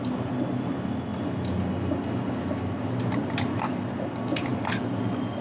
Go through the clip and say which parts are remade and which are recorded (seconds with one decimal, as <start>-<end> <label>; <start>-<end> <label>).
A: 0.0-5.4 recorded